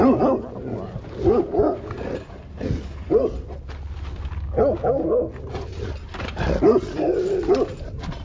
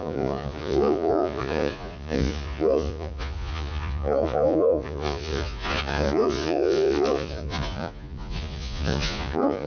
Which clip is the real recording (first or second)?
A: first